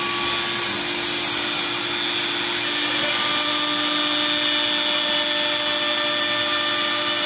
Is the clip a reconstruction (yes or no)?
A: no